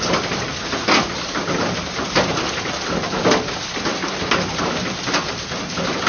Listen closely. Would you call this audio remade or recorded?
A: recorded